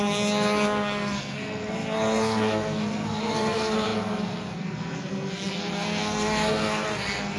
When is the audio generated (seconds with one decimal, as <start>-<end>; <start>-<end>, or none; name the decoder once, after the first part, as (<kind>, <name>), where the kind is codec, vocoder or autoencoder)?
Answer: 0.0-7.4 (codec, SNAC)